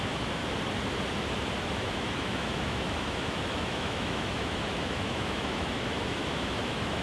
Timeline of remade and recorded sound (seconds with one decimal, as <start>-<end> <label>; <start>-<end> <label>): 0.0-0.4 remade; 0.4-1.7 recorded; 1.7-7.0 remade